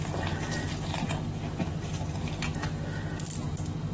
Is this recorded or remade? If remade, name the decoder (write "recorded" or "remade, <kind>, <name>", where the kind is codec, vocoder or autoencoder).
recorded